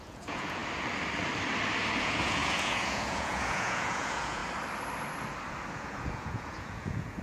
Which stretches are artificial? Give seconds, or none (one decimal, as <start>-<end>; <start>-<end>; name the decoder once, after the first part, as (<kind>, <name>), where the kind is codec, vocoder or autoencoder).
0.0-0.6 (vocoder, Vocos); 2.0-4.4; 5.7-7.2